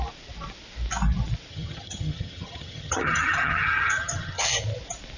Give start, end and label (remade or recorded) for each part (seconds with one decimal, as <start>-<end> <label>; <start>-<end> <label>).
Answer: 0.0-1.5 recorded; 1.5-4.5 remade; 4.5-5.2 recorded